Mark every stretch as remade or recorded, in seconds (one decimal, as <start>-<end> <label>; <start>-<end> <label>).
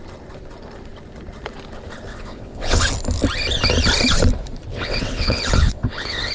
0.0-2.1 recorded; 2.1-2.8 remade; 2.8-4.7 recorded; 4.7-6.3 remade